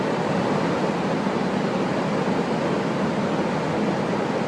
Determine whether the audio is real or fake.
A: real